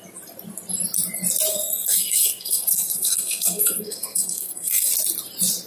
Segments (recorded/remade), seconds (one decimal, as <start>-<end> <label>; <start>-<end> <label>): 0.0-1.5 recorded; 1.5-4.9 remade; 4.9-5.7 recorded